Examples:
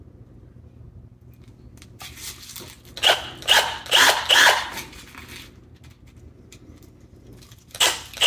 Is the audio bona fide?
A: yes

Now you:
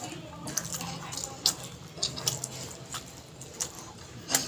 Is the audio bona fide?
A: yes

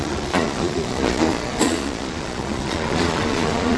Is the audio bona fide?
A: no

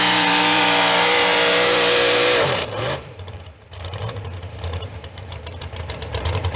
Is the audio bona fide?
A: no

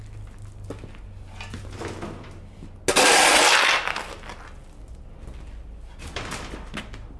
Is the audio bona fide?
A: yes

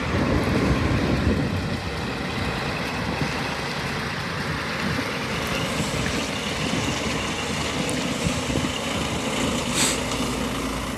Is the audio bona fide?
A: yes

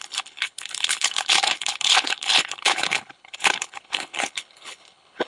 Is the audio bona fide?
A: no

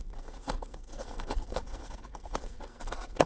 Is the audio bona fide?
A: no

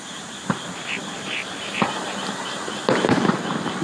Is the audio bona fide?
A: no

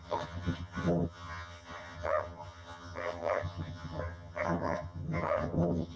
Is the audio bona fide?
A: no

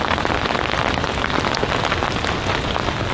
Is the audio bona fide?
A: yes